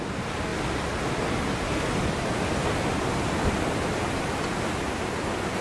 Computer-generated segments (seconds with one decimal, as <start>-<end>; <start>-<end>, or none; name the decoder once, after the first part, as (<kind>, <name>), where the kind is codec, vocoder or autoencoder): none